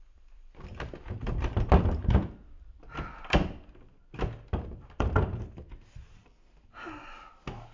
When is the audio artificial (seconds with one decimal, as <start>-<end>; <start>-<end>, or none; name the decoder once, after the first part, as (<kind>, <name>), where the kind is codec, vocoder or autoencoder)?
none